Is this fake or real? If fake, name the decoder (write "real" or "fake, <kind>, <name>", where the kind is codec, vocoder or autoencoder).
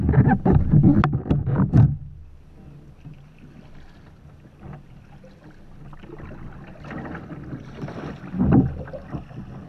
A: real